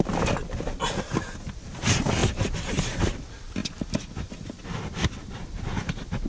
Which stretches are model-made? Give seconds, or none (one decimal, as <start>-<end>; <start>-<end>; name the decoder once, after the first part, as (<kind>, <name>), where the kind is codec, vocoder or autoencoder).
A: none